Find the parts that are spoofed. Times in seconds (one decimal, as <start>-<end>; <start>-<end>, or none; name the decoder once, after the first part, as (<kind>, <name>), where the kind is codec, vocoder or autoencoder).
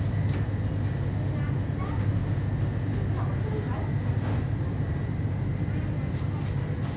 none